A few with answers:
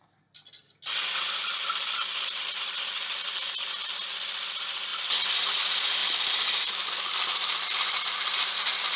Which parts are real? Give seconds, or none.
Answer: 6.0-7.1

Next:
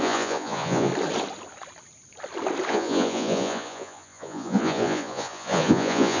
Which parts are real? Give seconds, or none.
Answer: 0.9-2.7

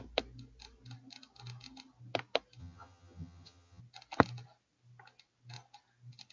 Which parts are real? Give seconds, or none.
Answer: 0.0-2.6; 3.8-6.3

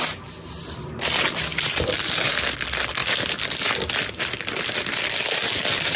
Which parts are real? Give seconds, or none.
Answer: 0.0-1.5; 2.3-6.0

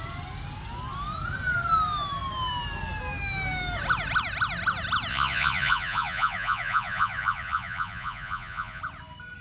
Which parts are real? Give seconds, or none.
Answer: 0.0-5.1; 8.8-9.4

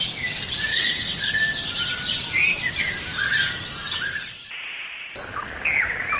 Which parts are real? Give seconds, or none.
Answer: 0.0-0.7; 1.4-6.2